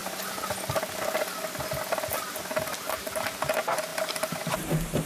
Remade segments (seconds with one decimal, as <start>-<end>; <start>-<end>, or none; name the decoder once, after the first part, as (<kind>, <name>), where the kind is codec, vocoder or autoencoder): 3.9-5.1 (vocoder, BigVGAN v2)